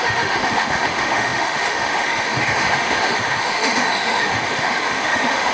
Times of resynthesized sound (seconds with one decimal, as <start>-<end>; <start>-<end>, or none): 0.0-5.5